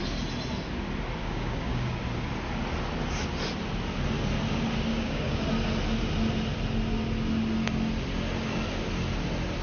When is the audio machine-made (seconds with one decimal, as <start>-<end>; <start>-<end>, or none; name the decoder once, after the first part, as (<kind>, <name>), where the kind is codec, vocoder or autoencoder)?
1.2-2.0 (codec, DAC); 4.9-5.4